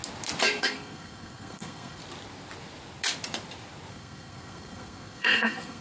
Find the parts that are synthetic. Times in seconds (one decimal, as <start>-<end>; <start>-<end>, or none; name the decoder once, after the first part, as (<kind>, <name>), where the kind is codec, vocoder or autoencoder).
0.6-2.0 (codec, SNAC); 3.9-5.8